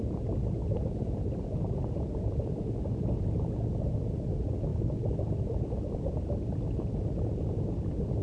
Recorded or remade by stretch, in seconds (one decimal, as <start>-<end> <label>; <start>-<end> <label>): 0.0-8.2 recorded